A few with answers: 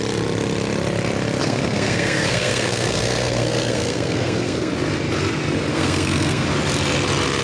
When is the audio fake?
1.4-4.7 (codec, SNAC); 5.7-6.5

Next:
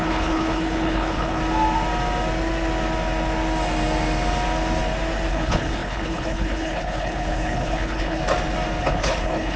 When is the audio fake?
0.0-1.4 (codec, HILCodec); 5.3-8.2; 8.8-9.6

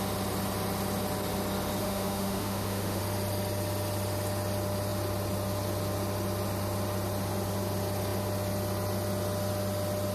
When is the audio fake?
1.8-3.0 (autoencoder, DAC-VAE)